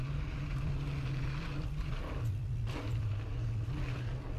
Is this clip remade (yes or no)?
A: no